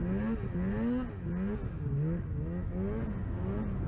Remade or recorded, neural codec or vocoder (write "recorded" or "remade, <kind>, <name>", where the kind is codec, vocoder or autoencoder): recorded